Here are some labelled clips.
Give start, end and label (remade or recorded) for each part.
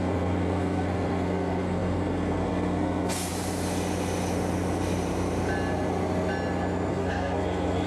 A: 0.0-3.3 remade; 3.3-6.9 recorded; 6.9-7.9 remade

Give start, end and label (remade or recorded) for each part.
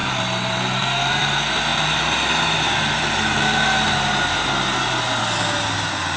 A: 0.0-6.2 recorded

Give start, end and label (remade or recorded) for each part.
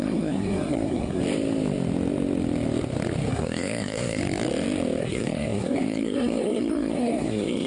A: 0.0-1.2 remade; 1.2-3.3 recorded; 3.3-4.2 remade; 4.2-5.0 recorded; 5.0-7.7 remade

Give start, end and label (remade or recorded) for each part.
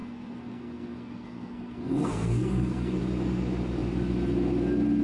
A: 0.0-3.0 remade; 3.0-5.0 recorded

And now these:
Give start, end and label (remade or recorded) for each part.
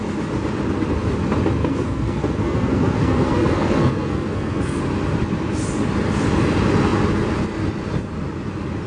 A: 0.0-1.6 recorded; 1.6-4.8 remade; 4.8-8.9 recorded